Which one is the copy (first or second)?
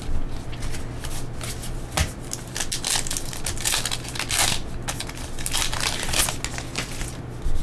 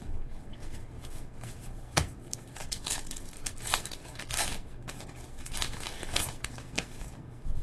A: second